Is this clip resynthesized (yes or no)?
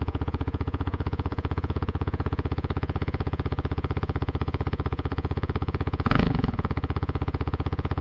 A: yes